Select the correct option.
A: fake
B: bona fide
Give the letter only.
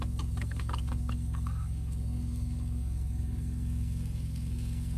A